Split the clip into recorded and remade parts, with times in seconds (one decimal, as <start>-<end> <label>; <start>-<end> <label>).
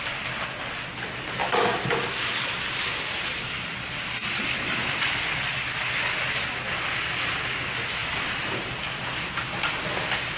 0.0-1.4 recorded; 1.4-3.0 remade; 3.0-8.0 recorded; 8.0-9.8 remade; 9.8-10.4 recorded